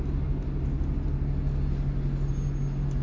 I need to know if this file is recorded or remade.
recorded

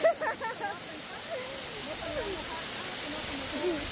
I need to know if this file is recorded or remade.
recorded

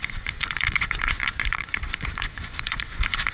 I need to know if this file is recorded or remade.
remade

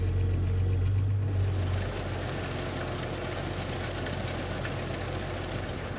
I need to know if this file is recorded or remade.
recorded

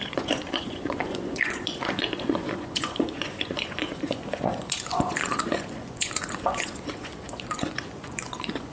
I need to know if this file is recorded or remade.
remade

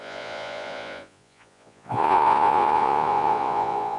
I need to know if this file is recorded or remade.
remade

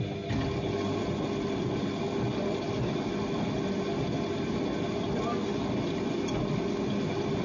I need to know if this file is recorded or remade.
recorded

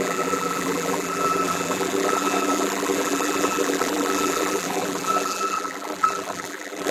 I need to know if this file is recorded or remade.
remade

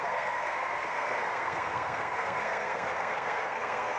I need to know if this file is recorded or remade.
remade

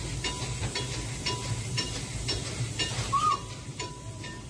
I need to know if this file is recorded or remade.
recorded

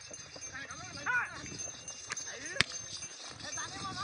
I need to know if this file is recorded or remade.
recorded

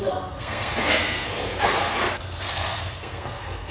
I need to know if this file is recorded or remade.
remade